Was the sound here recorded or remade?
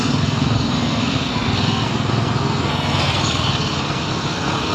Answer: remade